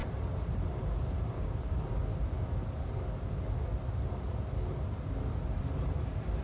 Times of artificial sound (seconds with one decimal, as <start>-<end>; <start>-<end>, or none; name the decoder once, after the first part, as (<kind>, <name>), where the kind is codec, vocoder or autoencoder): 0.0-2.0 (vocoder, BigVGAN v2); 5.4-6.4